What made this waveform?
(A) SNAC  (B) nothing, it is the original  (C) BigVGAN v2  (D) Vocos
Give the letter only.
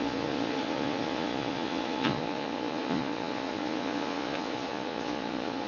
D